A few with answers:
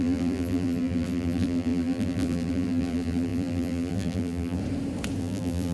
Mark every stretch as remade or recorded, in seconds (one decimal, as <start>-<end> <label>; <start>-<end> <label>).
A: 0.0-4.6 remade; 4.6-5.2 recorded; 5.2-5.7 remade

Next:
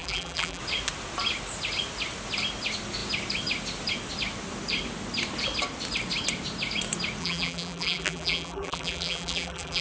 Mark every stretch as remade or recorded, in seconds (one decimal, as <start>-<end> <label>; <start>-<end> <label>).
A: 0.0-0.6 remade; 0.6-7.2 recorded; 7.2-9.8 remade

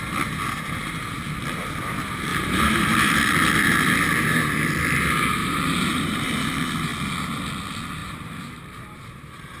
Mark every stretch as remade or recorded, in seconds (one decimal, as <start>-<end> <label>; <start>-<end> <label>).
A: 0.0-2.3 recorded; 2.3-3.3 remade; 3.3-5.4 recorded; 5.4-6.5 remade; 6.5-8.0 recorded; 8.0-9.6 remade